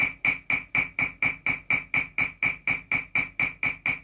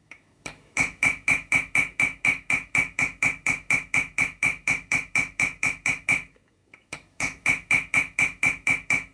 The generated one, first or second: second